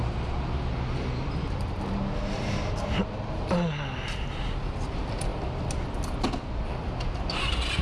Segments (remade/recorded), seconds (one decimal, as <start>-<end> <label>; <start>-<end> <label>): 0.0-7.8 recorded